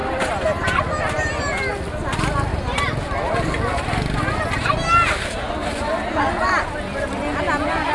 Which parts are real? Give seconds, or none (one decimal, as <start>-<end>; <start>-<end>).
0.0-7.9